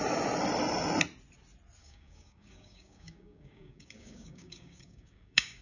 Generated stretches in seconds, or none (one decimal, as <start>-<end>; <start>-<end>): 1.8-5.6